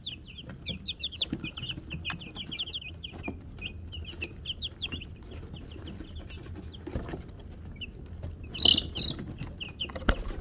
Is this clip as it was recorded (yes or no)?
yes